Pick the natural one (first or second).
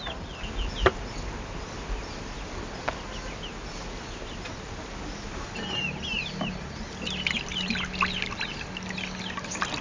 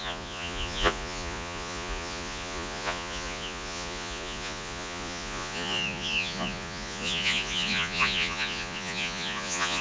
first